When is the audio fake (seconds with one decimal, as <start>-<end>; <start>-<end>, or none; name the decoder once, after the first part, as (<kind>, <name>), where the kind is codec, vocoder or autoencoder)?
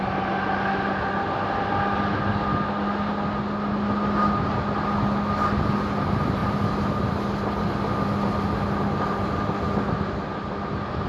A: none